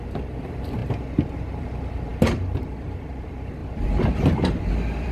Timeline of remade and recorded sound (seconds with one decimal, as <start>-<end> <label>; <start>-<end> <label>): 0.0-0.8 remade; 0.8-1.6 recorded; 1.6-5.1 remade